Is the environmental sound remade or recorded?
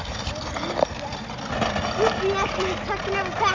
recorded